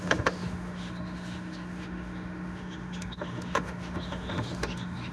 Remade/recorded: remade